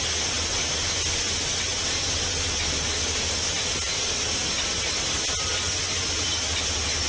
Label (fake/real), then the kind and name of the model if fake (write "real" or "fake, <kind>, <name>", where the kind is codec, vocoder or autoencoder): real